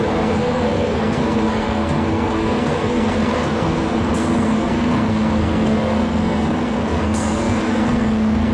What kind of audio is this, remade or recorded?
remade